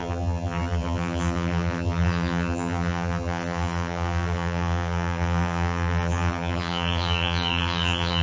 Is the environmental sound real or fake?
fake